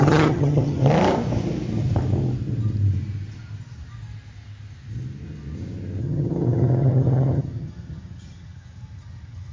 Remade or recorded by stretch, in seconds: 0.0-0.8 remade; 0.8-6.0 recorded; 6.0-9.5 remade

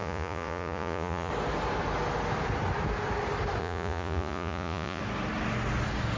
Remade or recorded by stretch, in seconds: 0.0-1.3 remade; 1.3-3.6 recorded; 3.6-5.0 remade; 5.0-6.2 recorded

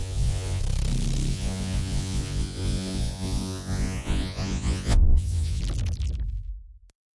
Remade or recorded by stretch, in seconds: 0.0-0.6 remade; 0.6-1.3 recorded; 1.3-5.6 remade; 5.6-7.2 recorded